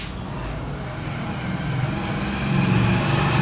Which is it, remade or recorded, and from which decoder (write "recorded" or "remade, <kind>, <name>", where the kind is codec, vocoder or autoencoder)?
recorded